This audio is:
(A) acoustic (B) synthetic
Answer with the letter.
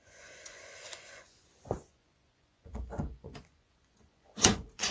B